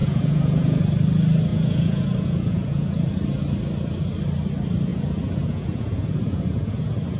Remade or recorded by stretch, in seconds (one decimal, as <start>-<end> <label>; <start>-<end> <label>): 0.0-0.8 remade; 0.8-1.5 recorded; 1.5-3.1 remade; 3.1-4.9 recorded; 4.9-7.2 remade